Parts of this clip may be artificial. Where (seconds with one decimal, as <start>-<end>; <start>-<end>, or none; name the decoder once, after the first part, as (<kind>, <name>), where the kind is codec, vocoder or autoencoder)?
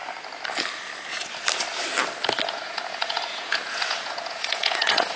2.5-5.2 (vocoder, Vocos)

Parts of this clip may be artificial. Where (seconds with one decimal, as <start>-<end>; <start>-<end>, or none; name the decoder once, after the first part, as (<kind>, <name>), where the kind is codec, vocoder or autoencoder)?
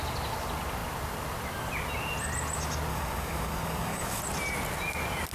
2.9-4.2 (codec, DAC)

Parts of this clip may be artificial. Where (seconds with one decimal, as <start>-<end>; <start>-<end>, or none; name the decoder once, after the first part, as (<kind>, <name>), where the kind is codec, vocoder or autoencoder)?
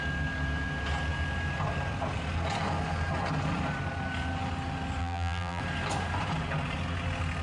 5.0-5.6 (vocoder, BigVGAN v2)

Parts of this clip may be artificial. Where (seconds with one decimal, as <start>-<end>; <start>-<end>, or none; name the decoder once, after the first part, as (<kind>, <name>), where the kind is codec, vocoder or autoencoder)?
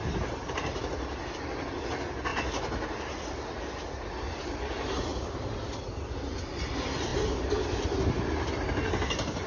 none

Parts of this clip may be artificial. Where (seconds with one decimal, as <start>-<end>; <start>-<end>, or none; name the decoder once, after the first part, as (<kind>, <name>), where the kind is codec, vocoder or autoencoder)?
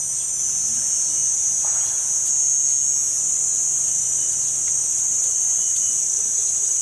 none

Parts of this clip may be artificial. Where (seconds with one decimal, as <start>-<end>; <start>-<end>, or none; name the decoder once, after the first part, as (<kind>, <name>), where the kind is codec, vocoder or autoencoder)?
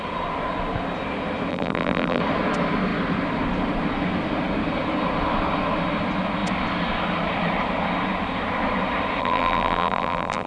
1.5-2.2 (vocoder, BigVGAN v2); 9.2-10.5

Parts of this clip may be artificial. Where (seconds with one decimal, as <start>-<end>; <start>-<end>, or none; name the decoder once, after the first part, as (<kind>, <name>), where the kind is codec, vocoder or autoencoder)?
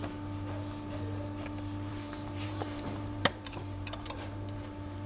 1.9-5.1 (vocoder, BigVGAN v2)